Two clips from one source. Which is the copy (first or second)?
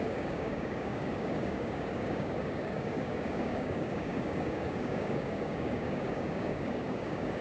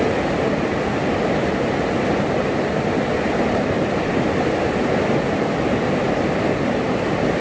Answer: first